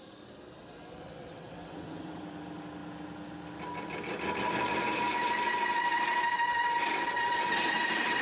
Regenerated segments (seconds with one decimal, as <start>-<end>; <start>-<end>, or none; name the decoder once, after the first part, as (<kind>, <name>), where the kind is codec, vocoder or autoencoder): 0.6-2.2 (vocoder, WaveNeXt)